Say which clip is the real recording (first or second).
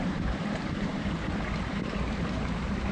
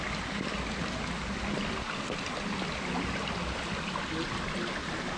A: second